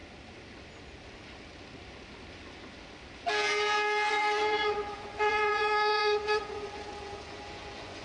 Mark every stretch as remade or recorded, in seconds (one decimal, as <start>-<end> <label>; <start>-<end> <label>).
0.0-4.1 recorded; 4.1-8.0 remade